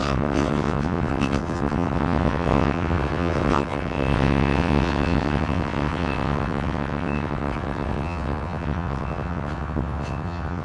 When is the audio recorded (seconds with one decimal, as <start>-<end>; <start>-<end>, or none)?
none